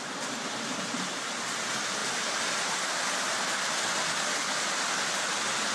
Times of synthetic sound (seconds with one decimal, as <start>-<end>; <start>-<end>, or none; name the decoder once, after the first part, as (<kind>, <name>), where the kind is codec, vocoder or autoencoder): none